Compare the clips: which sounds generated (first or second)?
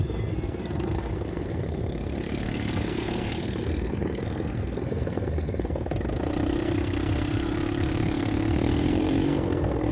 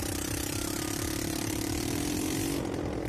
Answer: first